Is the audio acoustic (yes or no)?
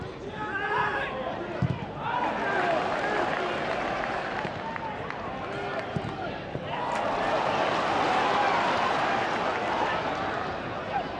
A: yes